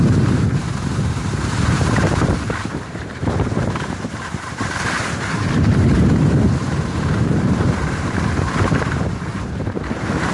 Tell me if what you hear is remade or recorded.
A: remade